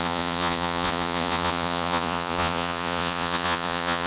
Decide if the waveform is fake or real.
fake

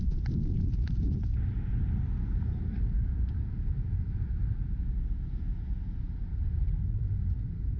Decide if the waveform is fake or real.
fake